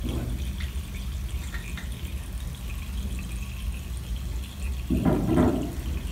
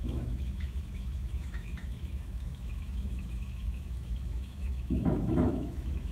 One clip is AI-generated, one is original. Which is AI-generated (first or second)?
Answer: second